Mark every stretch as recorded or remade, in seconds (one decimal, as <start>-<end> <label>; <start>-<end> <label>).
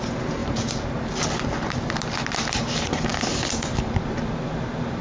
0.0-5.0 recorded